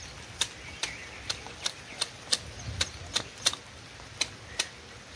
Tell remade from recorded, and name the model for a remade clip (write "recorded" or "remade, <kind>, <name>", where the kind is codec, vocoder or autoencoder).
recorded